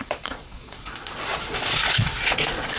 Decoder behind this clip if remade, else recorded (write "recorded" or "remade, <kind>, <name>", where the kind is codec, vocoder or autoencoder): remade, vocoder, Vocos